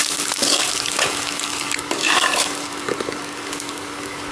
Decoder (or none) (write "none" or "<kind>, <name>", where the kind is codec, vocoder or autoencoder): codec, DAC